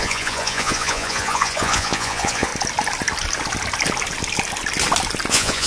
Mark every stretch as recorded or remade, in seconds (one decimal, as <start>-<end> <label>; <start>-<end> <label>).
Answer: 0.0-2.5 remade; 2.5-5.3 recorded; 5.3-5.7 remade

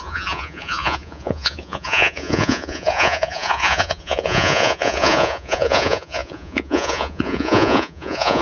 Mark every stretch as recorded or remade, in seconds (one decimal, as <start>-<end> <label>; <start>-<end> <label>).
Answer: 0.0-8.4 remade

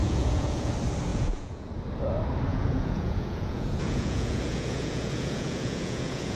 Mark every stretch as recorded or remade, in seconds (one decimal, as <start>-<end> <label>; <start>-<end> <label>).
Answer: 0.0-0.7 remade; 0.7-1.1 recorded; 1.1-1.7 remade; 1.7-2.5 recorded; 2.5-6.4 remade

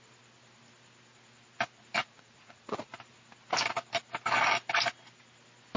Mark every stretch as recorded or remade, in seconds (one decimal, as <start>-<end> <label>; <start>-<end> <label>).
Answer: 0.0-2.0 recorded; 2.0-2.9 remade; 2.9-5.8 recorded

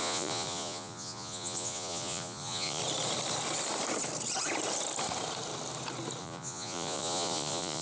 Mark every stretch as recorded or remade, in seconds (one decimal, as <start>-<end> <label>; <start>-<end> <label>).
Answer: 0.0-2.8 remade; 2.8-6.2 recorded; 6.2-7.8 remade